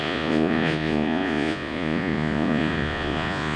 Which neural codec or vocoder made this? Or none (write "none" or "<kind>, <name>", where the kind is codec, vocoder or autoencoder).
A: vocoder, Vocos